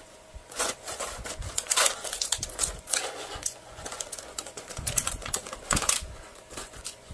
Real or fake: fake